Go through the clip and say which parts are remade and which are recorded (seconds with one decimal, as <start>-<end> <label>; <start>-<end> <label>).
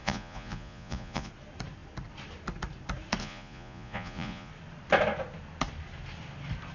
0.0-1.3 remade; 1.3-3.2 recorded; 3.2-4.5 remade; 4.5-6.7 recorded